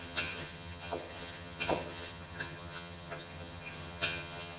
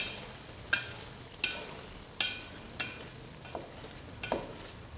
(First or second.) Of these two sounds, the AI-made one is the first